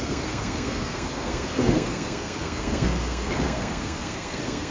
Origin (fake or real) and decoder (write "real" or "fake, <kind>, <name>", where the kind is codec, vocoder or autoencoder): fake, codec, SNAC